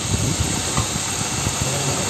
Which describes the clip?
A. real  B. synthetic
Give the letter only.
A